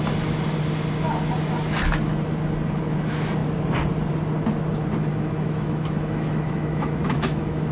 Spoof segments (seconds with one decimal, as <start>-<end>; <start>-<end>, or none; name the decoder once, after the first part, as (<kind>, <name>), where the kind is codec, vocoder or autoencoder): 5.1-7.7 (autoencoder, DAC-VAE)